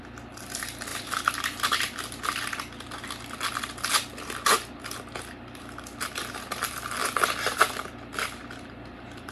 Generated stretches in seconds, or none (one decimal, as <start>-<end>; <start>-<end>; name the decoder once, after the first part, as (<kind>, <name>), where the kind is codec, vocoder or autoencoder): 0.9-1.8 (vocoder, BigVGAN v2)